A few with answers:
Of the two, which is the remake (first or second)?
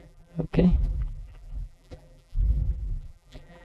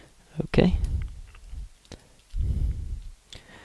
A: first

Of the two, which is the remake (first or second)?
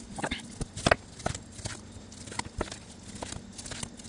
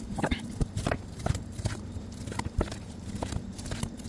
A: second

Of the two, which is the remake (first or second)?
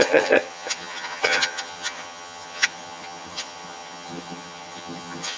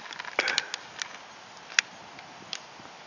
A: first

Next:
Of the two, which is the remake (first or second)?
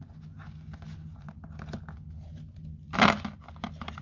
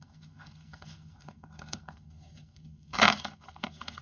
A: second